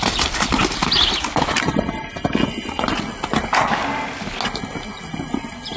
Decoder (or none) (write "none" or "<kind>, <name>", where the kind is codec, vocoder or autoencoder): none